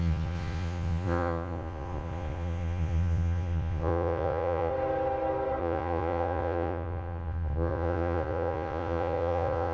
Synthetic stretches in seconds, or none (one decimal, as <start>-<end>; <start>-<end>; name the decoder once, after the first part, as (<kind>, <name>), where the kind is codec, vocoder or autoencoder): 0.0-4.7 (vocoder, Vocos); 5.6-9.7